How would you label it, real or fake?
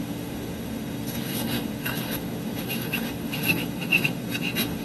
fake